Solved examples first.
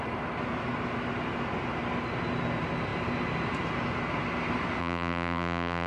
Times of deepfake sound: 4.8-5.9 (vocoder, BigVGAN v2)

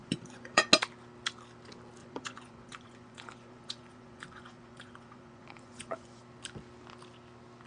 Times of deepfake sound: 0.0-0.7 (vocoder, Vocos); 2.0-6.2

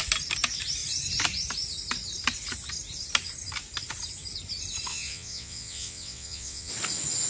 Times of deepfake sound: 4.9-6.7 (vocoder, WaveNeXt)

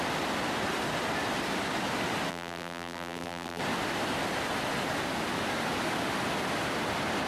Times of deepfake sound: 2.3-3.6 (vocoder, BigVGAN v2)